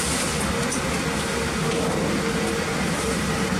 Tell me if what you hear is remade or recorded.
recorded